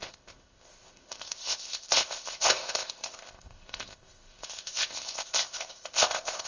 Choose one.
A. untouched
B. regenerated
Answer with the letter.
B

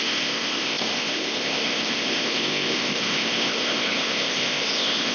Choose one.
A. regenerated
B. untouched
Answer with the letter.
A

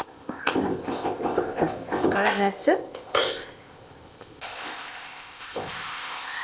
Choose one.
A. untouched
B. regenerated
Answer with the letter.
B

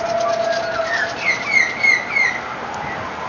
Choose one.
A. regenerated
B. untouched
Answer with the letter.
B